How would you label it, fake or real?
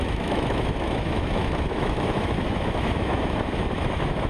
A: fake